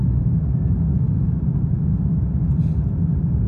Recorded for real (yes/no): yes